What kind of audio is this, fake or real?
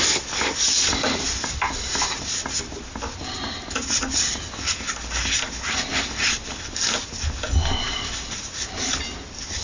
real